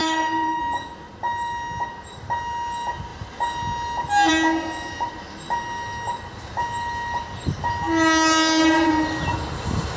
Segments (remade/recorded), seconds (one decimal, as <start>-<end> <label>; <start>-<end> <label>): 0.0-0.6 remade; 0.6-10.0 recorded